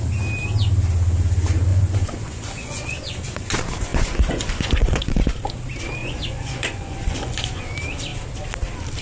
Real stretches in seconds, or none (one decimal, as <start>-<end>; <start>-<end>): 0.0-1.7; 3.5-3.9; 5.4-6.0; 7.6-9.0